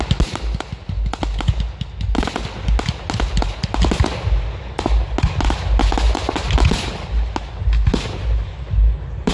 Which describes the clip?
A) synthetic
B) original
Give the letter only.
B